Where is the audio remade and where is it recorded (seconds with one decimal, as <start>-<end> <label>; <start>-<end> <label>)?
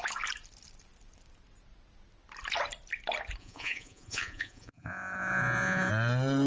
0.0-3.4 recorded; 3.4-5.9 remade; 5.9-6.5 recorded